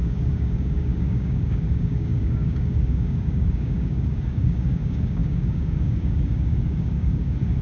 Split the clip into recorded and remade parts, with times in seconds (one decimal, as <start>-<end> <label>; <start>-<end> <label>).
0.0-7.6 remade